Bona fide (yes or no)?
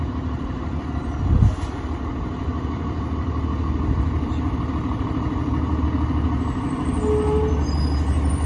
yes